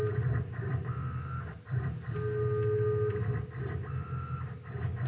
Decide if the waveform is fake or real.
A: real